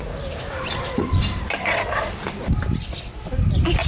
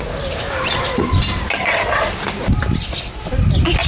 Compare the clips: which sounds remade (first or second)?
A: first